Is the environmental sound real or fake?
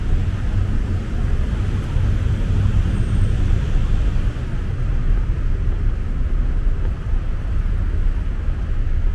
real